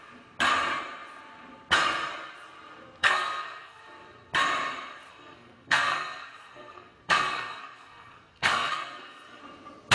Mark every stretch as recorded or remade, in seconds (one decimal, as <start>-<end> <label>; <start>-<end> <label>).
0.0-3.0 recorded; 3.0-3.8 remade; 3.8-5.1 recorded; 5.1-9.4 remade; 9.4-9.9 recorded